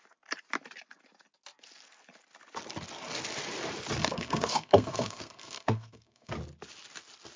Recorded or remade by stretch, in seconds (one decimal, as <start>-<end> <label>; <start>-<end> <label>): 0.0-4.0 recorded; 4.0-6.3 remade; 6.3-7.4 recorded